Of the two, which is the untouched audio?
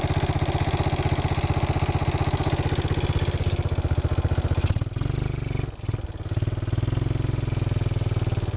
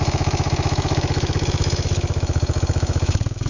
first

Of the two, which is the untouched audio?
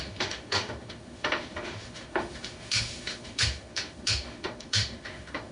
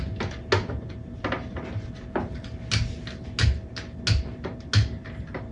second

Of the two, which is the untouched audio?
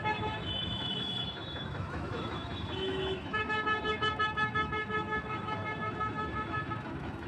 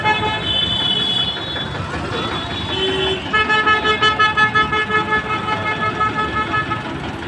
second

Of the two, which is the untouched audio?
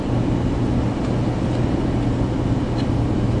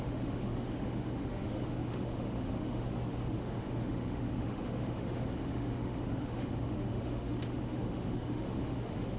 first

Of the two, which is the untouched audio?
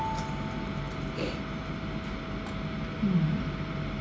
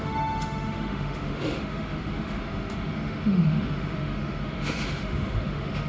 first